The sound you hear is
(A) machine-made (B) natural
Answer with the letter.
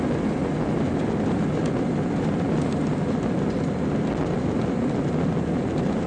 B